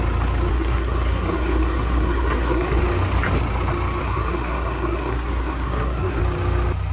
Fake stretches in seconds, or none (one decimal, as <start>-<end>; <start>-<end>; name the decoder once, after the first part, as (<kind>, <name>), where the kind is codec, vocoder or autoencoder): 0.5-2.8 (codec, SNAC); 4.0-6.2